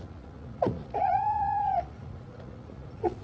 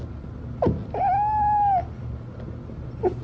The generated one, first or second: first